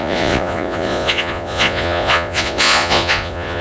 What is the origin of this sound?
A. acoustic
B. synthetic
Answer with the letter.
B